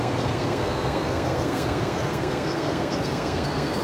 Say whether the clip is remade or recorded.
remade